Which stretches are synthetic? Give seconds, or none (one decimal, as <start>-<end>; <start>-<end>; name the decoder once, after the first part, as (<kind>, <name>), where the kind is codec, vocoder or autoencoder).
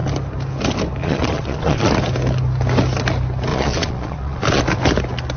1.0-1.9 (vocoder, Vocos); 3.5-4.6